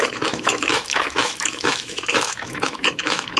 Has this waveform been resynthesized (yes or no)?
yes